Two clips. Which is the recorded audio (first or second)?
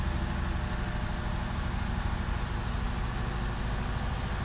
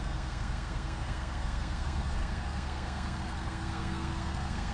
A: first